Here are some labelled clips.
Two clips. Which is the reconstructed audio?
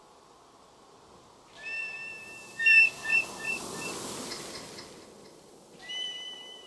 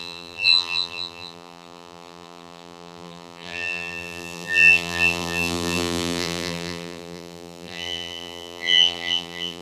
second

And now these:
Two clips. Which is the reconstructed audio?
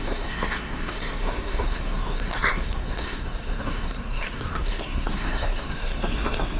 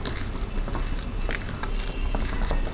first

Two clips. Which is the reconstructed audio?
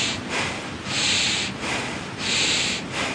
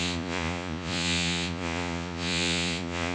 second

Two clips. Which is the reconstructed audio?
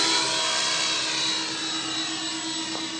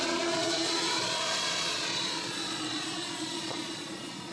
second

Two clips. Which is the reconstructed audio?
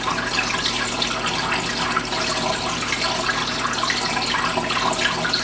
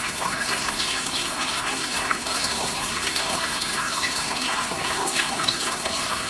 second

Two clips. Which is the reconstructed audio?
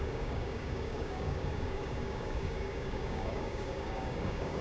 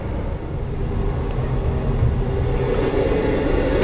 first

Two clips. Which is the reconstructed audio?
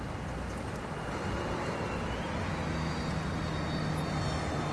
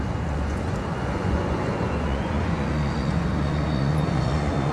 second